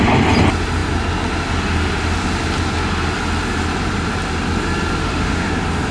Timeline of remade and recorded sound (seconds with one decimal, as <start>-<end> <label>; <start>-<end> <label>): 0.0-5.0 recorded; 5.0-5.5 remade; 5.5-5.9 recorded